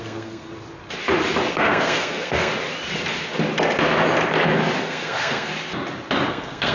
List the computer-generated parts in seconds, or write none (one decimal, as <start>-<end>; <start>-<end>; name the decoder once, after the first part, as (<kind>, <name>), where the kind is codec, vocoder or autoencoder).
0.0-0.5 (codec, SNAC); 1.5-2.5; 4.8-5.5; 6.3-6.7